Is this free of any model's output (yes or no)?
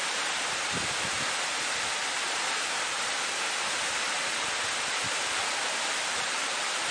yes